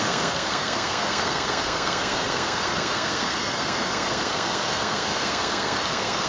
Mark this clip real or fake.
fake